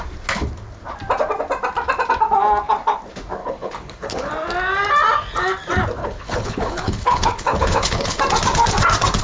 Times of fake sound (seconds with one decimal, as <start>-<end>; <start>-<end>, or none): 3.4-4.3; 6.0-8.2